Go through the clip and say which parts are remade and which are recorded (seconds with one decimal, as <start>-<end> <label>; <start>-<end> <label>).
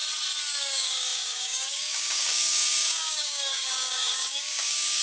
0.0-0.6 recorded; 0.6-5.0 remade